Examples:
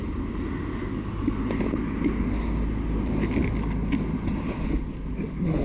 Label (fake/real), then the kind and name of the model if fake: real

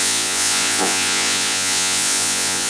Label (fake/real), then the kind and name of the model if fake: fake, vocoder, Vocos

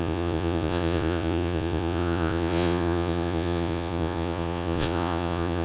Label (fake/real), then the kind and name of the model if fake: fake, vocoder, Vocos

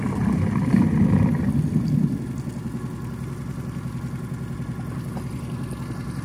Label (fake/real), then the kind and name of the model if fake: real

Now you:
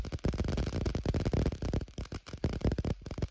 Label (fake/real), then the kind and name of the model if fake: real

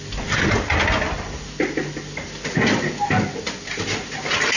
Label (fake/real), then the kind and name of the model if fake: real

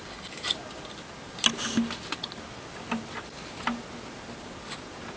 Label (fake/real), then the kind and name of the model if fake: real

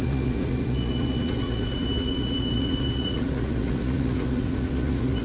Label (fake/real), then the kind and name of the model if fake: fake, vocoder, Vocos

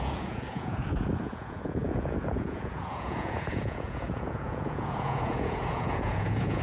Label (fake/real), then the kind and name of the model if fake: fake, vocoder, Vocos